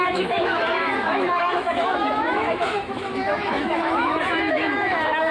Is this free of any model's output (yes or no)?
no